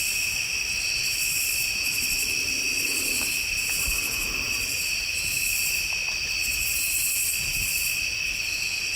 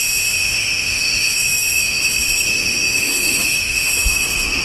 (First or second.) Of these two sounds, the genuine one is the first